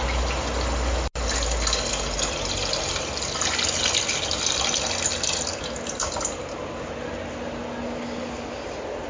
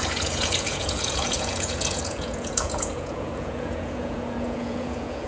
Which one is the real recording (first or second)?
first